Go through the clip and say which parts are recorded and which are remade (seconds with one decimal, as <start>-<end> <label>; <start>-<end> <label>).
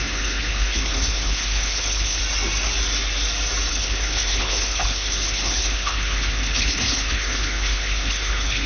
0.0-2.2 remade; 2.2-3.7 recorded; 3.7-8.7 remade